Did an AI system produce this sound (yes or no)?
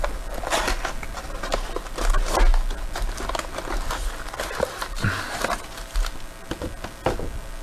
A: no